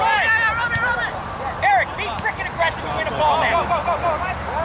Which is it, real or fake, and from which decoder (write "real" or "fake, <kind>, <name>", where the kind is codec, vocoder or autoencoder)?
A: real